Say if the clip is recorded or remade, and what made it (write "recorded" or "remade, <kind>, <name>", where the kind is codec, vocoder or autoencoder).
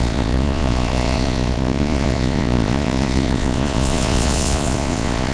remade, vocoder, Vocos